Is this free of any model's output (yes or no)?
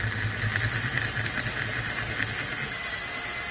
yes